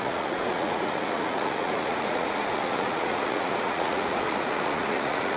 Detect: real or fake fake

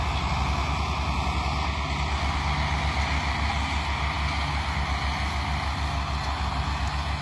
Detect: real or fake real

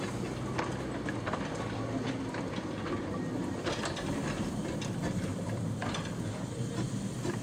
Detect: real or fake real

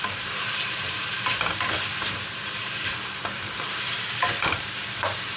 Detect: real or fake fake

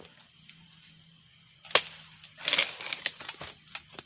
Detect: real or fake real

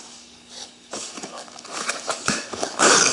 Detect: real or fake fake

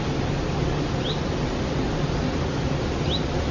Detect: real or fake real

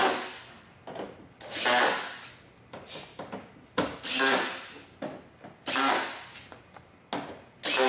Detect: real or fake real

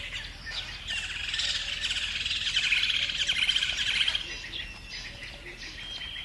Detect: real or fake real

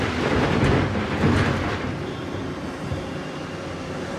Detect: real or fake real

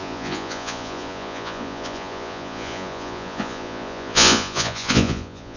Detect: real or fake fake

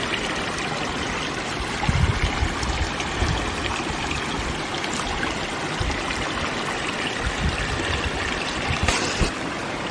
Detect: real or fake real